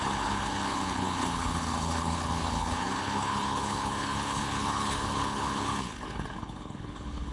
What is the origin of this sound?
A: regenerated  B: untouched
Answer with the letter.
A